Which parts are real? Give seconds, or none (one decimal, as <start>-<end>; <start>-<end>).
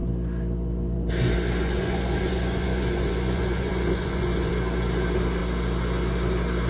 0.0-1.6; 4.5-6.7